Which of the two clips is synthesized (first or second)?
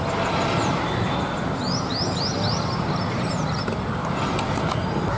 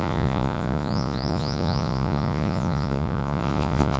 second